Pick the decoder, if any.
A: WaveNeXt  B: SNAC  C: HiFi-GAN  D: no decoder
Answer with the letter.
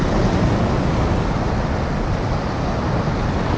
D